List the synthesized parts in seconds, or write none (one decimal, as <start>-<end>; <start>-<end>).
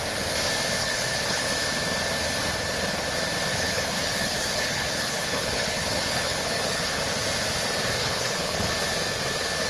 0.8-1.5; 3.5-7.0; 8.0-8.7